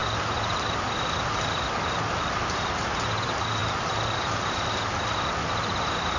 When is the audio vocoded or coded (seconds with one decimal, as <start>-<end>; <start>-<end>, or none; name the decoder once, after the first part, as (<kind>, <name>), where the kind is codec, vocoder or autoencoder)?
none